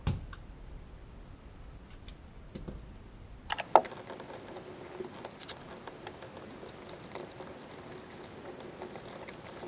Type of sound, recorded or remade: recorded